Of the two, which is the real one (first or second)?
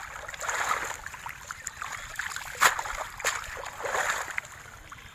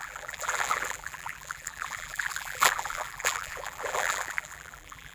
first